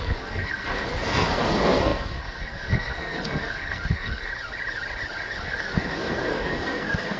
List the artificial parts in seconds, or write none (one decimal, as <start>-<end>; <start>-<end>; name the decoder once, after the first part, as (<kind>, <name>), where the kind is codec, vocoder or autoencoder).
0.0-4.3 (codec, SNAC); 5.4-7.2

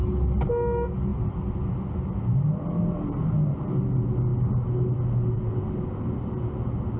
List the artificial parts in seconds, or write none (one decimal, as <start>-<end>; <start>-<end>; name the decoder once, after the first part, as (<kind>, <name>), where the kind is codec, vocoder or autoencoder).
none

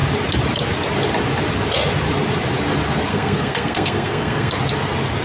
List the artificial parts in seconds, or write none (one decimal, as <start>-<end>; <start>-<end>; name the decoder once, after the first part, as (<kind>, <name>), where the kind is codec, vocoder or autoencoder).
3.1-4.6 (codec, SNAC)